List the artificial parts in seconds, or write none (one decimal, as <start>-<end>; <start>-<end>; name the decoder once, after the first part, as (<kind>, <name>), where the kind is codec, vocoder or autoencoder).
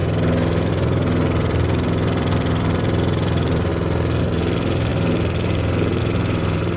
0.7-3.7 (vocoder, BigVGAN v2); 4.2-6.8